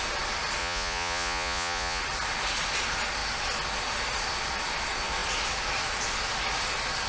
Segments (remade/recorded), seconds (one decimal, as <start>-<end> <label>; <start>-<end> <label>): 0.0-0.6 recorded; 0.6-2.0 remade; 2.0-7.1 recorded